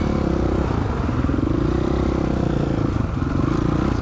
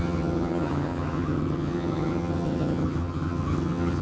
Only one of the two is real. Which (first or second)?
first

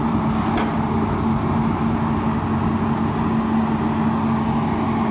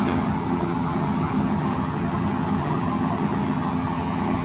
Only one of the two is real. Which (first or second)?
first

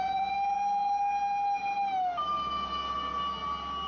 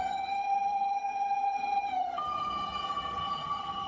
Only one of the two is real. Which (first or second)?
first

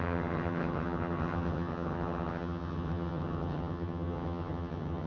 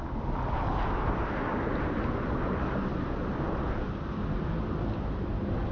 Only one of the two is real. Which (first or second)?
second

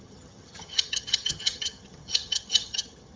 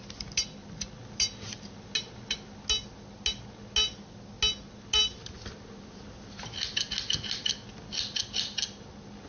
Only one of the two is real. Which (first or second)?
second